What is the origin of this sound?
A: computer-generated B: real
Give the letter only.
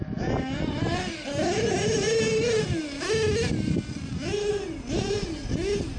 B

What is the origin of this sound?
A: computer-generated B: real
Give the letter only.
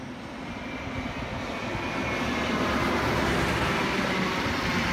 B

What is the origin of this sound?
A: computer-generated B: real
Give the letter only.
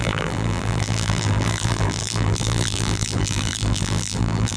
A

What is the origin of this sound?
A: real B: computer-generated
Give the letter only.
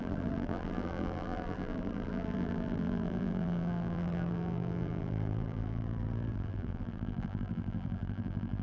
B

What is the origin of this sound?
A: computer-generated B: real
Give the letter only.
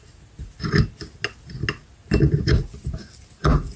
B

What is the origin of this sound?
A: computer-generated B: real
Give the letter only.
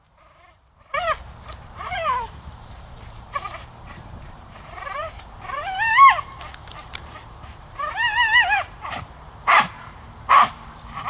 A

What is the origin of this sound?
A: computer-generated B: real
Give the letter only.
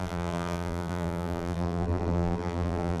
A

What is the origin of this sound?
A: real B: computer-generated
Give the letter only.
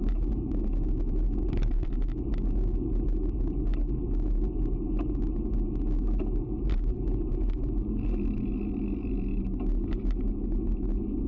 A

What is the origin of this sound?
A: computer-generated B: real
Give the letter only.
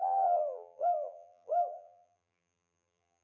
A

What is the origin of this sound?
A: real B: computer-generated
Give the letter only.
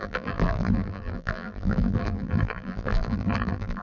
B